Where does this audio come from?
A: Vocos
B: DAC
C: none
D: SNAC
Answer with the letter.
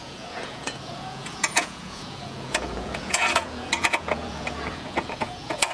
A